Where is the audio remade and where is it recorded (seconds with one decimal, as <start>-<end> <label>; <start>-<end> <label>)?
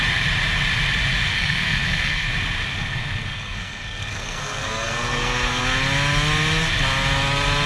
0.0-1.2 recorded; 1.2-2.3 remade; 2.3-2.7 recorded; 2.7-5.6 remade; 5.6-7.7 recorded